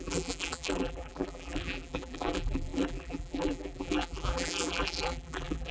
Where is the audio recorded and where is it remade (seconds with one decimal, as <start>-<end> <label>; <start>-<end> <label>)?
0.0-5.7 remade